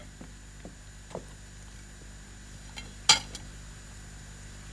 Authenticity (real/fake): real